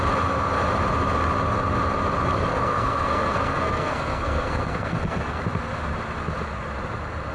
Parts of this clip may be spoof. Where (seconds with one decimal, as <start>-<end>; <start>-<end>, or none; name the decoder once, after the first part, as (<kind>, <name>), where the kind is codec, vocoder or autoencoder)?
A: 2.5-5.4 (codec, SNAC)